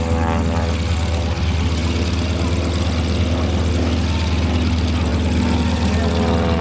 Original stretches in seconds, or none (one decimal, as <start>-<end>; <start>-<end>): 0.0-6.6